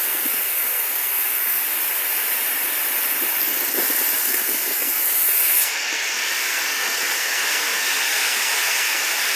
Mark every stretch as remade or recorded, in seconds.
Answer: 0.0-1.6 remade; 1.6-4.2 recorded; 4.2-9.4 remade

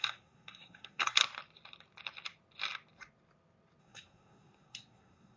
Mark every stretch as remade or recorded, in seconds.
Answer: 0.0-1.2 remade; 1.2-3.8 recorded; 3.8-5.4 remade

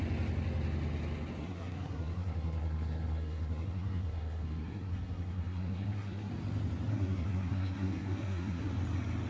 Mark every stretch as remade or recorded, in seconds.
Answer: 0.0-1.4 recorded; 1.4-6.3 remade; 6.3-6.9 recorded; 6.9-8.7 remade; 8.7-9.3 recorded

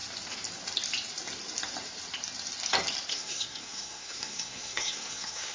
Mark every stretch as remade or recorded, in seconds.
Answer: 0.0-3.1 recorded; 3.1-5.5 remade

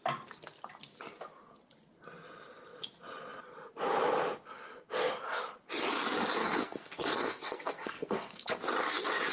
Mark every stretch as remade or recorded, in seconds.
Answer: 0.0-6.4 recorded; 6.4-8.5 remade; 8.5-9.3 recorded

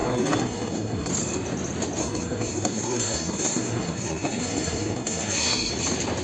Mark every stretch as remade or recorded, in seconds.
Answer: 0.0-1.1 remade; 1.1-2.0 recorded; 2.0-5.7 remade; 5.7-6.2 recorded